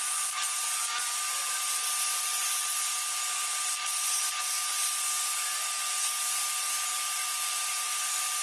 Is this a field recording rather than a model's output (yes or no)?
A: yes